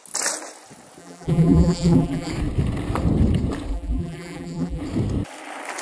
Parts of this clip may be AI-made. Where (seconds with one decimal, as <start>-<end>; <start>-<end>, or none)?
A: 1.0-2.3; 3.7-4.8

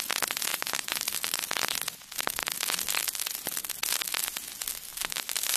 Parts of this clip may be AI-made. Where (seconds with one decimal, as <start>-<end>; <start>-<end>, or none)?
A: 0.5-1.4; 4.9-5.6